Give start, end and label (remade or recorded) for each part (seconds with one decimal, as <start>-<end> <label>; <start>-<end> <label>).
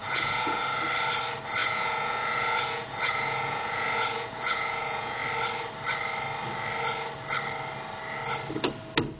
0.0-0.6 remade; 0.6-1.6 recorded; 1.6-5.2 remade; 5.2-9.2 recorded